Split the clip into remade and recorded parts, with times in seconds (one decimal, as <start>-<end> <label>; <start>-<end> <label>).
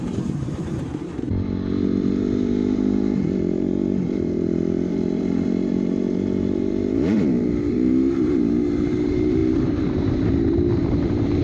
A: 0.0-11.4 remade